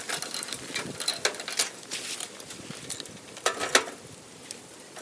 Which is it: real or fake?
real